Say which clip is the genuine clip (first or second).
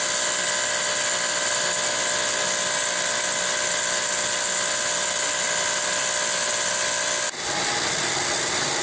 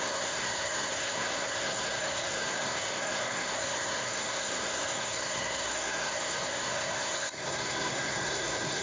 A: first